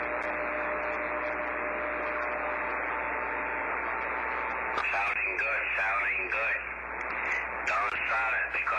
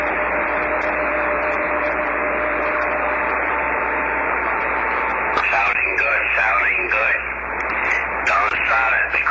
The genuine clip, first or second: first